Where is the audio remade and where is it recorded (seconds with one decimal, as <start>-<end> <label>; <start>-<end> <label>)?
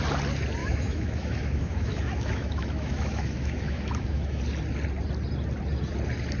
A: 0.0-0.6 recorded; 0.6-4.4 remade; 4.4-6.4 recorded